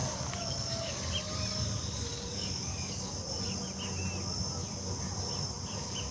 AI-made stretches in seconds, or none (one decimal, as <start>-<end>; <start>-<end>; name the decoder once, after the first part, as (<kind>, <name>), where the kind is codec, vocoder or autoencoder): 0.0-1.0 (codec, DAC); 2.1-3.1